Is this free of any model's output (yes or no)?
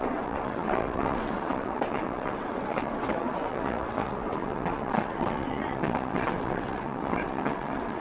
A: no